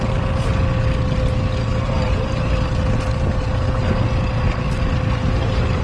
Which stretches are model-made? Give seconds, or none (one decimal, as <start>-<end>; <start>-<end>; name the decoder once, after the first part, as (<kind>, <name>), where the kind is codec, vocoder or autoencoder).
none